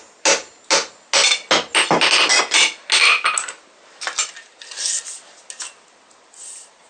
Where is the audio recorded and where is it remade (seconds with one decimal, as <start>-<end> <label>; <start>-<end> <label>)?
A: 0.0-6.9 recorded